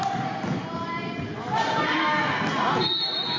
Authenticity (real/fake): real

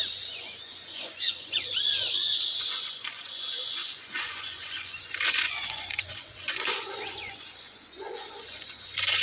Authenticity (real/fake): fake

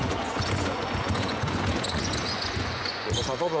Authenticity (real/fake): fake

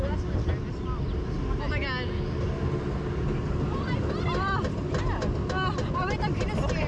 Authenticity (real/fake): real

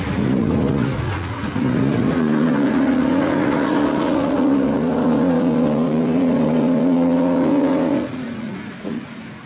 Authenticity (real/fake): fake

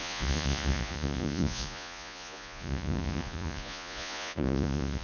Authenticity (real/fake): fake